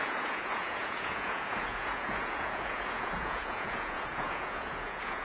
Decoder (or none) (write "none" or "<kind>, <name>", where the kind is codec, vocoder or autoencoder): vocoder, Vocos